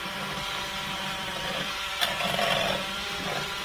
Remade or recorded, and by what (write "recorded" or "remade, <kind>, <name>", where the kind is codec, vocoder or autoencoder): remade, vocoder, BigVGAN v2